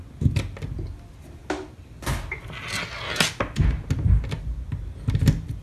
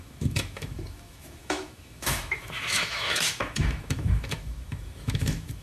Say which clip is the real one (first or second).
first